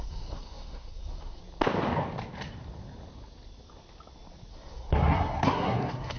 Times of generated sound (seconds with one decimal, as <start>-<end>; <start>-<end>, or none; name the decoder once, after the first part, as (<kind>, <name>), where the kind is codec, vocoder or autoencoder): 0.0-1.4 (codec, SNAC); 4.5-6.2